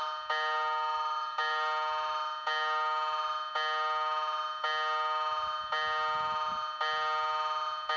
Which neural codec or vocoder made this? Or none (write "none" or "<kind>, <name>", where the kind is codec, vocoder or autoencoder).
none